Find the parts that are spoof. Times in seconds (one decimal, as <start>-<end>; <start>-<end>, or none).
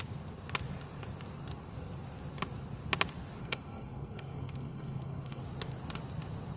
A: 3.4-5.4